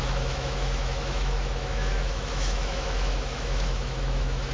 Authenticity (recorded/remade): remade